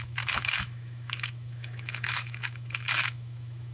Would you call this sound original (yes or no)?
no